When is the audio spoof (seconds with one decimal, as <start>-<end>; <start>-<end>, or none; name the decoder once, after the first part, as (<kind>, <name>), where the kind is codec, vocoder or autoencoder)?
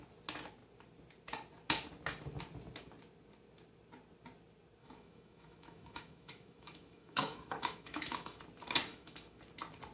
4.8-8.4 (autoencoder, DAC-VAE); 8.9-9.4